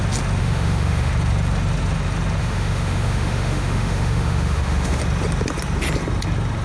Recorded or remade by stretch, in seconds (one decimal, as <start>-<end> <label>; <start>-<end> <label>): 0.0-0.4 recorded; 0.4-1.1 remade; 1.1-2.4 recorded; 2.4-5.0 remade; 5.0-6.6 recorded